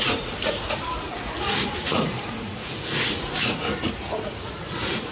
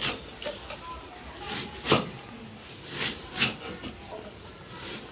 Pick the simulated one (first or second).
first